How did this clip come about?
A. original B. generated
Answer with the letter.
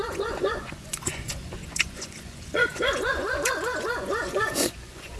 B